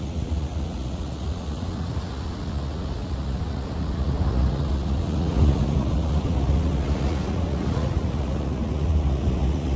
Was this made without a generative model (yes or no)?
no